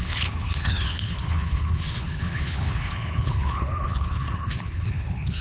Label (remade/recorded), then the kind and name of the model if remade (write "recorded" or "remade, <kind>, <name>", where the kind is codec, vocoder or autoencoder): remade, codec, HILCodec